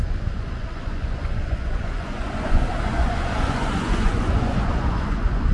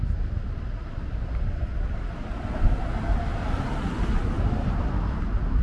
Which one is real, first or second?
second